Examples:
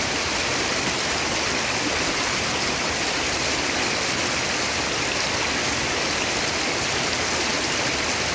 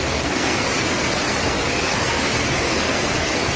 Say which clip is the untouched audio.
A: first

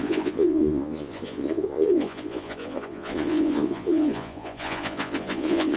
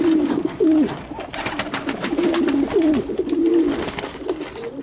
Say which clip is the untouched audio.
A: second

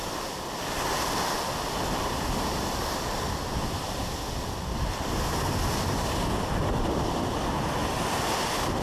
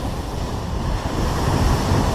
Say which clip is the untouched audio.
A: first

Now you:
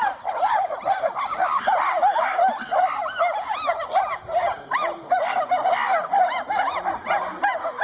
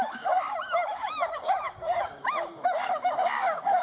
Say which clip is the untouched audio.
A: first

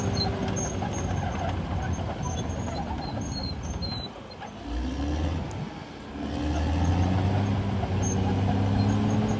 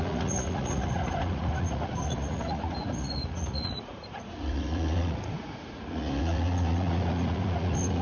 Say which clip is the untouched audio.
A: first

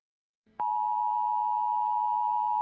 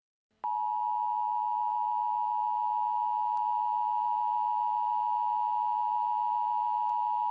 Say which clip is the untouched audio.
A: second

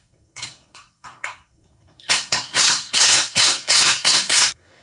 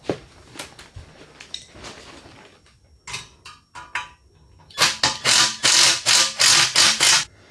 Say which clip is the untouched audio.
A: second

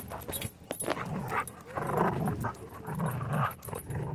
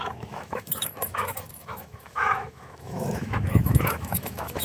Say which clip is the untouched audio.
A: first